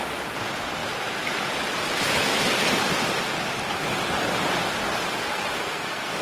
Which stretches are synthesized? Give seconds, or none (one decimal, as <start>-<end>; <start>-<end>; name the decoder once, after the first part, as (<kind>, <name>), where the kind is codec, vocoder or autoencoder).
5.2-6.2 (codec, SNAC)